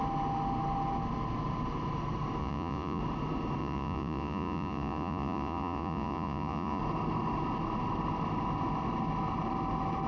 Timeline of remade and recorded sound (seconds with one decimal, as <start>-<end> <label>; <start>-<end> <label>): 0.0-2.4 recorded; 2.4-3.0 remade; 3.0-3.6 recorded; 3.6-6.8 remade; 6.8-10.1 recorded